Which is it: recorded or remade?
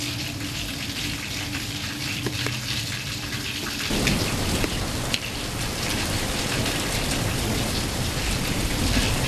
remade